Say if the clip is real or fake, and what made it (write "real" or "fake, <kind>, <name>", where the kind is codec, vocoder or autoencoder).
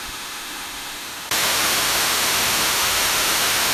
fake, autoencoder, DAC-VAE